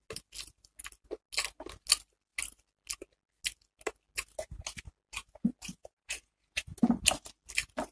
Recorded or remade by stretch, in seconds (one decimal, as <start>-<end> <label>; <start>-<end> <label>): 0.0-5.8 recorded; 5.8-6.6 remade; 6.6-7.9 recorded